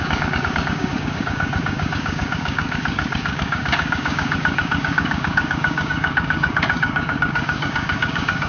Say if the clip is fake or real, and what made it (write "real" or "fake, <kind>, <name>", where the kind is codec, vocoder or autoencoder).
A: fake, codec, DAC